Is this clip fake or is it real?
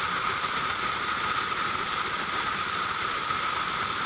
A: real